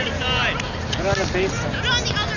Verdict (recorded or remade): recorded